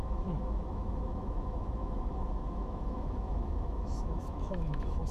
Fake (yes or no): yes